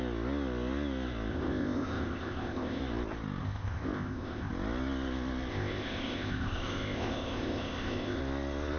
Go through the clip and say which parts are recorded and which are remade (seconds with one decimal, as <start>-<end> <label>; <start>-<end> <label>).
0.0-1.3 recorded; 1.3-2.8 remade; 2.8-3.4 recorded; 3.4-4.5 remade; 4.5-5.5 recorded; 5.5-8.2 remade; 8.2-8.8 recorded